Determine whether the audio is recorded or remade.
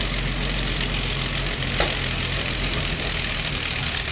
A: recorded